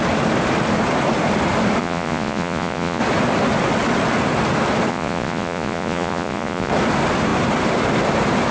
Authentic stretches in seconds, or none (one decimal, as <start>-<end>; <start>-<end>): 0.0-1.8; 3.0-4.9; 6.7-8.5